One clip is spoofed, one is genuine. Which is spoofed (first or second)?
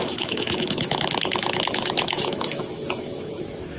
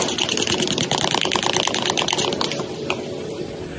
first